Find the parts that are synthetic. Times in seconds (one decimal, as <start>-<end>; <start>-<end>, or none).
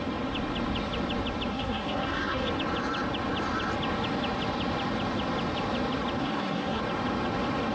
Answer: 1.5-2.5; 6.2-6.8